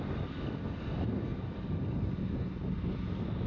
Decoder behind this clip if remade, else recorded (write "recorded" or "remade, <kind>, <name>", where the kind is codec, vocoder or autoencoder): recorded